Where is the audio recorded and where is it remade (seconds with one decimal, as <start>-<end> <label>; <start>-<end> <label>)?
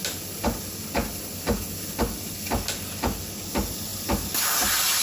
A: 0.0-5.0 recorded